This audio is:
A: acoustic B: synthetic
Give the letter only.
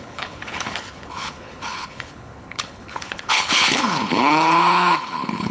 B